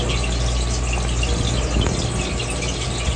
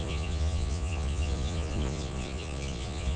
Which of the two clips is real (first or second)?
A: first